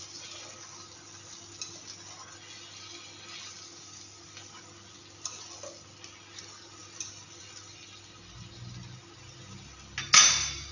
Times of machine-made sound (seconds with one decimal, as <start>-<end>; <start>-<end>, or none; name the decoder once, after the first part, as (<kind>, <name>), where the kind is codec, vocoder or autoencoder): none

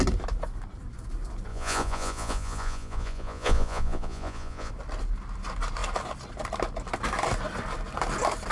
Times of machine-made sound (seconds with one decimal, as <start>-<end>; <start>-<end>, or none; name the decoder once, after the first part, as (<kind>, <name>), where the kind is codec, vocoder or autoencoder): 1.5-4.7 (vocoder, Vocos)

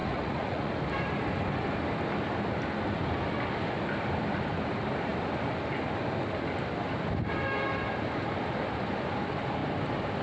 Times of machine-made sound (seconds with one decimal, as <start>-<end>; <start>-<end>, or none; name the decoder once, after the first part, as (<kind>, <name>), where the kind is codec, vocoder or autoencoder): 0.0-0.7 (vocoder, Vocos)

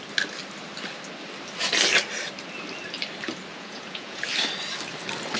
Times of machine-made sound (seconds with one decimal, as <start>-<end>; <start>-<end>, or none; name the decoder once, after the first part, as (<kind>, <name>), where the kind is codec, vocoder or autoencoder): 3.5-4.2 (vocoder, Vocos)